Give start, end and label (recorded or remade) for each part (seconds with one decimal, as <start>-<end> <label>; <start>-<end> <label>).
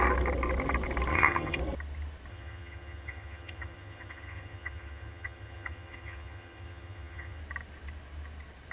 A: 0.0-1.1 recorded; 1.1-1.6 remade; 1.6-2.3 recorded; 2.3-7.4 remade; 7.4-8.7 recorded